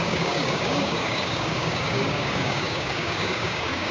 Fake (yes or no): yes